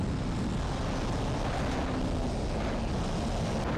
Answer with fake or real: real